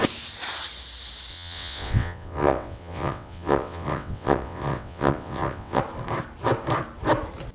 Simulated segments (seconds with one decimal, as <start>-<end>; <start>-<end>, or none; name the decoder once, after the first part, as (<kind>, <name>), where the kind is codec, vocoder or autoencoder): 1.3-5.8 (vocoder, WaveNeXt)